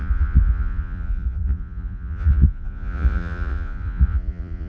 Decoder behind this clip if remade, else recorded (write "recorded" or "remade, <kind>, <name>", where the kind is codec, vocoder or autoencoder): remade, vocoder, Vocos